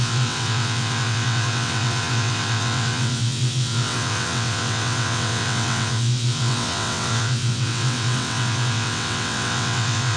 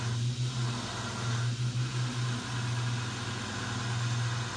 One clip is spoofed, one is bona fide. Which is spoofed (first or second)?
first